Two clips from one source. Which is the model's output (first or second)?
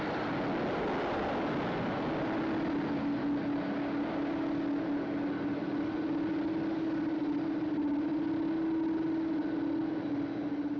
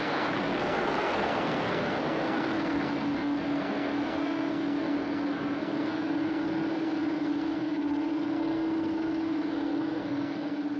second